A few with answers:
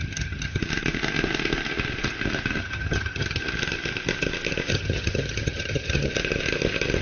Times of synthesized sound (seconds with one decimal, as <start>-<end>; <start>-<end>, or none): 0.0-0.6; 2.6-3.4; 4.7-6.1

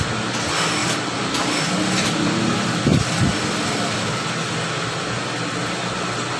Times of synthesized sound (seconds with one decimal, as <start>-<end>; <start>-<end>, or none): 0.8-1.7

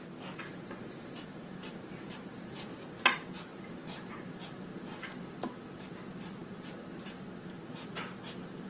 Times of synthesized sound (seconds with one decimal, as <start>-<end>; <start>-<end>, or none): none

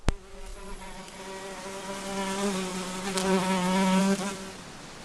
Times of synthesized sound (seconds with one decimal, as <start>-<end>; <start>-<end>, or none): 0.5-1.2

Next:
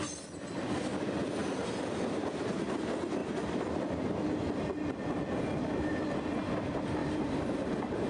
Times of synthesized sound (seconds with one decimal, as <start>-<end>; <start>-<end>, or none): 1.4-2.7; 7.0-8.1

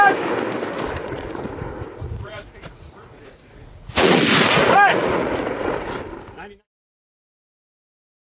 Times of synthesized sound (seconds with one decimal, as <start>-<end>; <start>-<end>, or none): 1.0-6.0

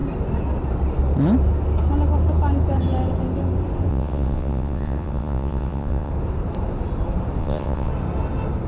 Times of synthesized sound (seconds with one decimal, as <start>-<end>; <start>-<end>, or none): 3.9-6.1; 7.4-7.9